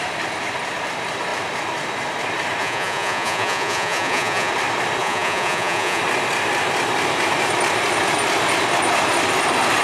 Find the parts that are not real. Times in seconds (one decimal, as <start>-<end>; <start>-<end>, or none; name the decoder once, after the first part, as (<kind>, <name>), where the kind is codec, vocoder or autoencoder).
2.6-4.5 (vocoder, Vocos); 5.0-6.0